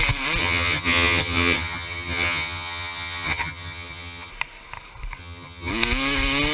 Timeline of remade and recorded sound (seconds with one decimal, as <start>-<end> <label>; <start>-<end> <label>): 0.0-0.4 recorded; 0.4-4.3 remade; 4.3-5.2 recorded; 5.2-5.7 remade; 5.7-6.5 recorded